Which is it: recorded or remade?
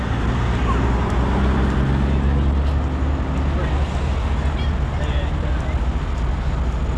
recorded